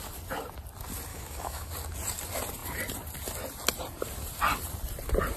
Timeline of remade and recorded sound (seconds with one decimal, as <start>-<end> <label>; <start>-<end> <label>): 0.0-1.1 recorded; 1.1-1.7 remade; 1.7-5.4 recorded